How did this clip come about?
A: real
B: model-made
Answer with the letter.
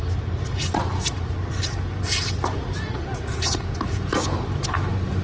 A